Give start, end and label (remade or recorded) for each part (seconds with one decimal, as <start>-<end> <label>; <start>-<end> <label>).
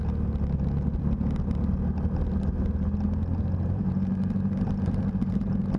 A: 0.0-3.3 recorded; 3.3-5.8 remade